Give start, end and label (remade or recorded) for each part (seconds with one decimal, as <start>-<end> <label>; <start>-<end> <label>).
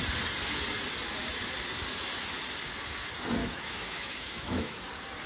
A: 0.0-3.4 recorded; 3.4-4.8 remade; 4.8-5.3 recorded